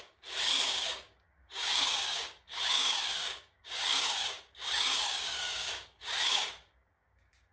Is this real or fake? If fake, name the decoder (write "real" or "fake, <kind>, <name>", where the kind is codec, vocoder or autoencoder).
fake, codec, DAC